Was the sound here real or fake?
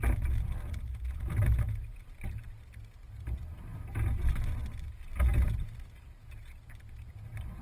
real